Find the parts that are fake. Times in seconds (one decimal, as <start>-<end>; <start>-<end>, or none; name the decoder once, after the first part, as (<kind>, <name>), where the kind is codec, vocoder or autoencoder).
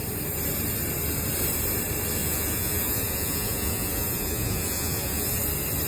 2.2-5.4 (vocoder, Vocos)